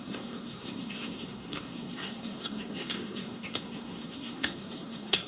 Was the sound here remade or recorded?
remade